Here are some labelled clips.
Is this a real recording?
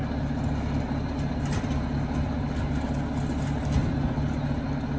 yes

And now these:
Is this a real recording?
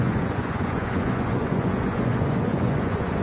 no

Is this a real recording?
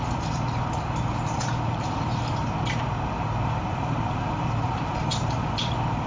no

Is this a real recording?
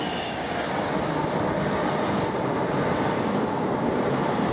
yes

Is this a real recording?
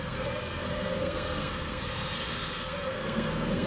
no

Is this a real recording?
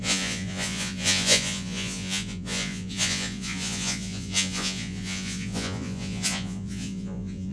no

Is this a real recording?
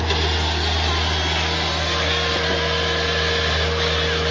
yes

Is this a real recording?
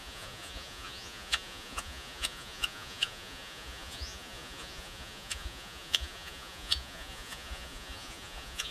no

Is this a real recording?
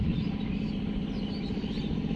yes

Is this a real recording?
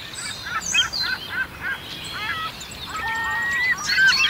yes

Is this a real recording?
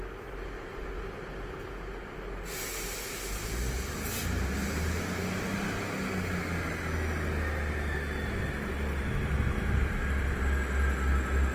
yes